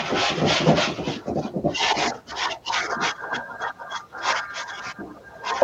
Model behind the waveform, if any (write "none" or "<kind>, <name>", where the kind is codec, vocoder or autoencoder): none